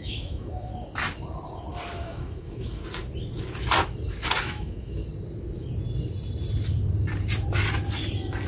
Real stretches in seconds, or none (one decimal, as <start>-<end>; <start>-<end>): 0.7-2.0; 2.8-4.4; 5.0-8.5